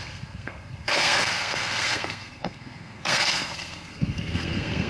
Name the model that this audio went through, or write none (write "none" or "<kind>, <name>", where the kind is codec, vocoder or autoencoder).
codec, SNAC